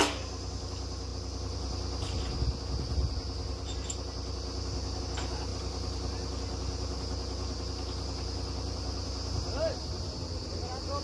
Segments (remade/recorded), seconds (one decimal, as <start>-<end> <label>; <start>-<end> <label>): 0.0-11.0 recorded